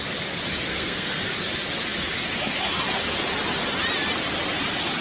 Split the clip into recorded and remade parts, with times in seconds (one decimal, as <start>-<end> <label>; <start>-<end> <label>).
0.0-0.7 recorded; 0.7-1.2 remade; 1.2-5.0 recorded